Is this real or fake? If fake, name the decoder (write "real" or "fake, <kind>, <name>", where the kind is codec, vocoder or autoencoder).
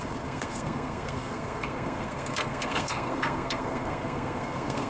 fake, codec, SNAC